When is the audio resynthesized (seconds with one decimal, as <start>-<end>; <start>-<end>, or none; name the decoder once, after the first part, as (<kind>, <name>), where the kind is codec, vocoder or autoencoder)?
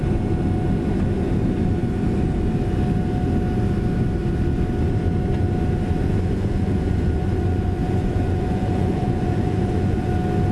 6.0-10.1 (vocoder, Vocos)